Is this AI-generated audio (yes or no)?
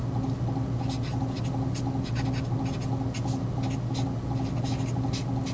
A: no